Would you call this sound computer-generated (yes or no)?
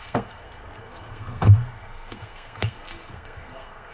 yes